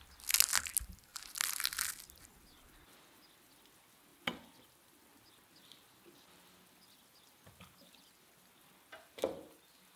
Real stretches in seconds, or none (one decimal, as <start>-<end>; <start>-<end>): 0.0-10.0